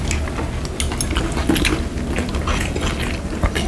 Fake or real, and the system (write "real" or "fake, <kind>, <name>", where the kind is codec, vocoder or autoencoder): real